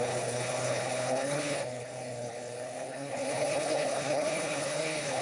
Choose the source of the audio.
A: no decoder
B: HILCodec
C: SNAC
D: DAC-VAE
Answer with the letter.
B